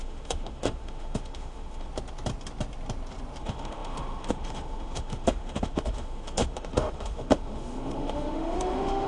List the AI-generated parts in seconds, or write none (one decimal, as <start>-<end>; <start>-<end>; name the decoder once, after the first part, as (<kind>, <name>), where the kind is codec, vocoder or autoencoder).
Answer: 0.0-1.9 (autoencoder, DAC-VAE); 3.4-9.1